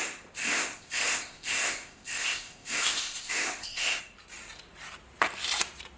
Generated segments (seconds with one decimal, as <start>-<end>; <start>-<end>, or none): 0.4-4.0